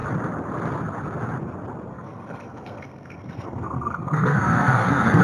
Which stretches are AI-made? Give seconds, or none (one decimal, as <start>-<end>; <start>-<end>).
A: 1.9-5.2